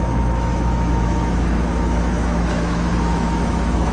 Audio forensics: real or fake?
fake